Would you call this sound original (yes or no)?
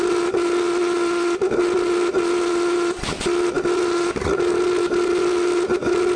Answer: yes